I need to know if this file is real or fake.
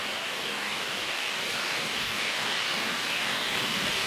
fake